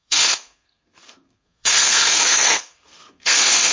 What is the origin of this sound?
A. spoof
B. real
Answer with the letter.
A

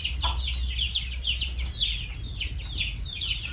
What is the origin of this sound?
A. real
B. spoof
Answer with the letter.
A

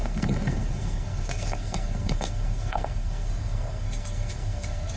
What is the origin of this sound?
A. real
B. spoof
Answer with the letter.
B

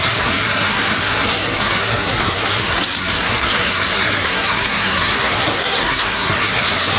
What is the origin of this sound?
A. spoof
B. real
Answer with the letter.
A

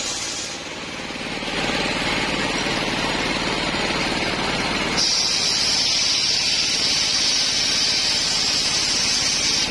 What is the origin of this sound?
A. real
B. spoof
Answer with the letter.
A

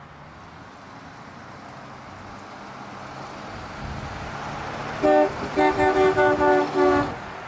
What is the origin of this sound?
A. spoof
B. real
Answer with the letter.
B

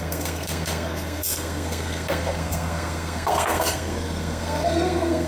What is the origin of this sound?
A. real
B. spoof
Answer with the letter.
B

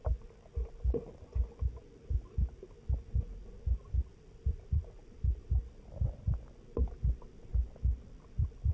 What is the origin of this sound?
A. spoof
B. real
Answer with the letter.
B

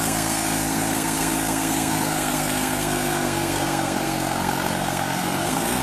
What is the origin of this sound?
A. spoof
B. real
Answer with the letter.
A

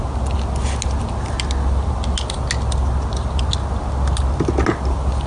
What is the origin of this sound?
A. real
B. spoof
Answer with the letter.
A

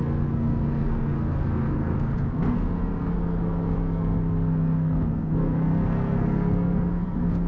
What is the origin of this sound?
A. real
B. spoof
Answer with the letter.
B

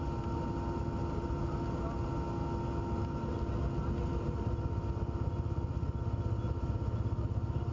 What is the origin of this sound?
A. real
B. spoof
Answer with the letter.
A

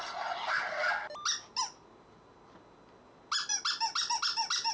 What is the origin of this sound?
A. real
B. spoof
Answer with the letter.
A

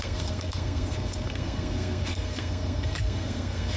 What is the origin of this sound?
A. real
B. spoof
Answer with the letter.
B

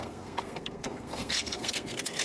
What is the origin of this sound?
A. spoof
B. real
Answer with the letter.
A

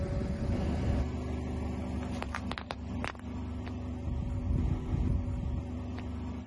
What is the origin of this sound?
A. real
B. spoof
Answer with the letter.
A